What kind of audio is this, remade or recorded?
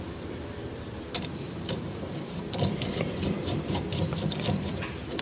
remade